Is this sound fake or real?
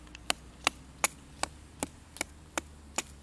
real